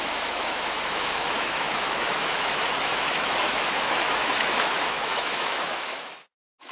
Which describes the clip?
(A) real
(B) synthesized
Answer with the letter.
B